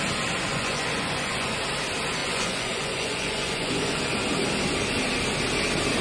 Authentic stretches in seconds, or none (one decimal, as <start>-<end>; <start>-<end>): 0.0-0.5; 1.6-2.2; 4.0-6.0